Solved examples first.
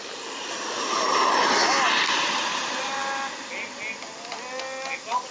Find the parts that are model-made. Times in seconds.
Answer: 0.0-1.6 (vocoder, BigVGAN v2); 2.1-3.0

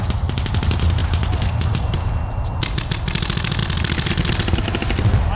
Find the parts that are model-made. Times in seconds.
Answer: 0.0-5.3 (vocoder, BigVGAN v2)

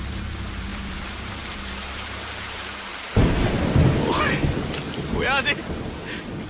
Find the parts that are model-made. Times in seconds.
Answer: 0.0-2.9 (vocoder, BigVGAN v2)

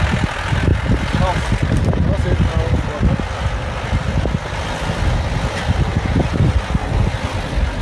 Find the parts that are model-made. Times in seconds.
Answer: none

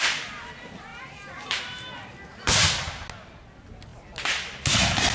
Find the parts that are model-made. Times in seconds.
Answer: 0.9-1.6 (vocoder, BigVGAN v2)

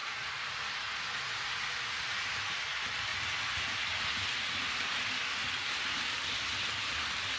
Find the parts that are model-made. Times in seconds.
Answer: none

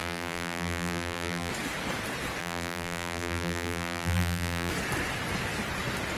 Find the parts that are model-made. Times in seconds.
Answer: 0.0-1.5 (vocoder, BigVGAN v2); 2.4-4.7

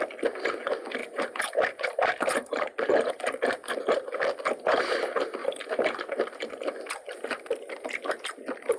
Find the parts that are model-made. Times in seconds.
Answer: 1.0-4.2 (vocoder, BigVGAN v2); 5.4-8.2